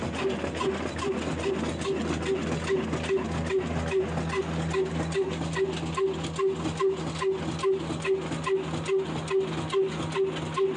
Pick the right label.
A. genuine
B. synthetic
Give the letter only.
A